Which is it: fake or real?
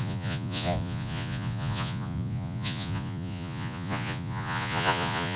fake